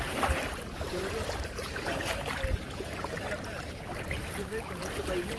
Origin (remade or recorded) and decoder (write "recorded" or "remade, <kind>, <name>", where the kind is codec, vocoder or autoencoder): remade, vocoder, BigVGAN v2